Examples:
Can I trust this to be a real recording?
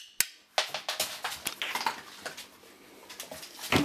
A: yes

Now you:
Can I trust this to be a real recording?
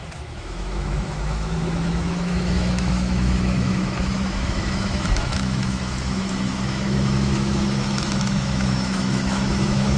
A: no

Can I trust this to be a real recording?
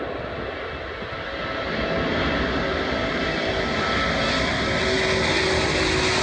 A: yes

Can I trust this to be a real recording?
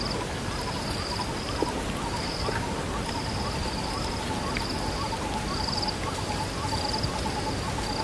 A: yes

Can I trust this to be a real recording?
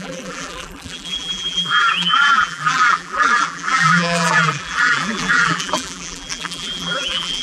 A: no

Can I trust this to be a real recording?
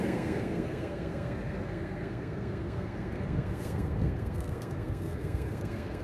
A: no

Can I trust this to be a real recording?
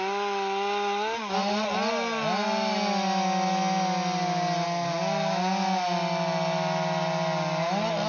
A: yes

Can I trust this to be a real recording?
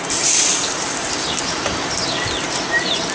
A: yes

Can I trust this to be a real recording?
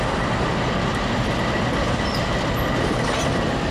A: yes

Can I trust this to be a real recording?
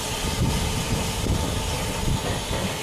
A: yes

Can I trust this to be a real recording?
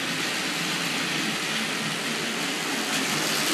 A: yes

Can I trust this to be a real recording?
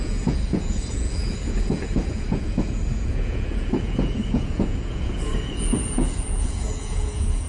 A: no